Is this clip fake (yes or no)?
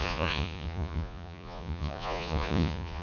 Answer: yes